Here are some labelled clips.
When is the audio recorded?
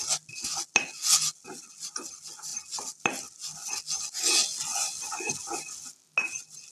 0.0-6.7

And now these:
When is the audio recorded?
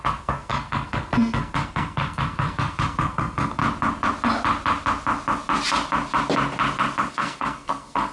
3.6-7.1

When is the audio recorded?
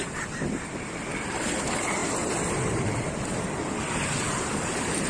0.0-5.1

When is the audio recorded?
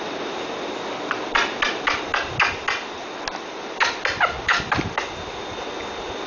0.0-6.3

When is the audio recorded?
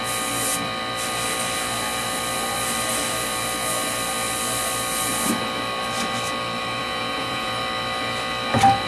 0.0-6.8; 7.5-8.9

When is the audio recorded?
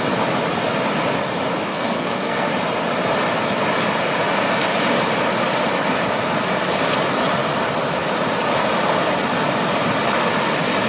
0.0-1.7; 2.5-10.9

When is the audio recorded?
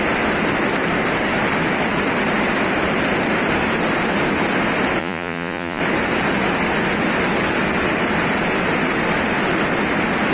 0.0-5.0; 5.8-10.3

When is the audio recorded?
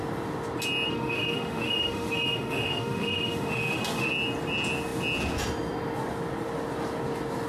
0.0-0.9; 4.1-7.5